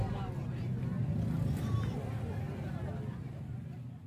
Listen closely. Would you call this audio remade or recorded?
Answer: recorded